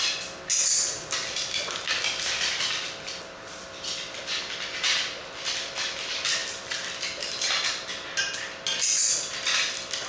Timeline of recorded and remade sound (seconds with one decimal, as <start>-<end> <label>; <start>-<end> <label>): 0.0-10.1 recorded